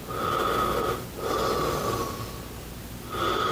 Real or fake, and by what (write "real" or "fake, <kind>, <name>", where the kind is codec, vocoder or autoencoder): real